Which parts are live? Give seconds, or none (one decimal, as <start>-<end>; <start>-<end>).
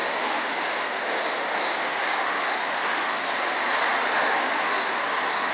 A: 3.3-4.1